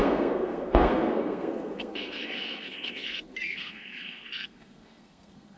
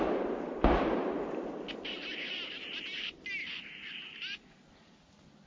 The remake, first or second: first